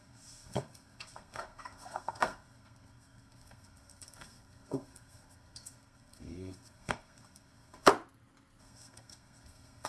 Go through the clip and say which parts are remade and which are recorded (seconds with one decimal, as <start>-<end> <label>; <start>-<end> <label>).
0.0-7.9 remade; 7.9-8.6 recorded; 8.6-9.9 remade